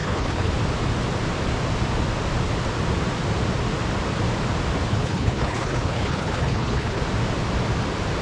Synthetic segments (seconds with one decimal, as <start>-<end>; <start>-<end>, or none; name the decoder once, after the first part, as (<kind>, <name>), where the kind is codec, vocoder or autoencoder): 0.0-0.5 (codec, HILCodec); 4.9-7.0